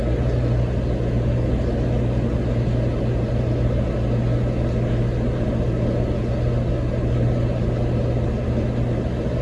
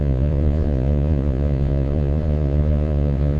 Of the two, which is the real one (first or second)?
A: first